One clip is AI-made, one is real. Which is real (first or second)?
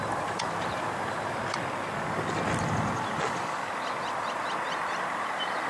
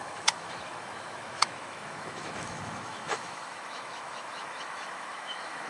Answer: first